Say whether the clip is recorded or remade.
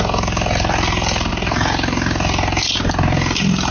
recorded